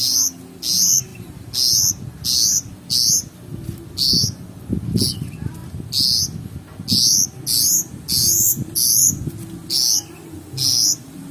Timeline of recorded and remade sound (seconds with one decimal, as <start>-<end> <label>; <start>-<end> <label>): 0.0-11.3 recorded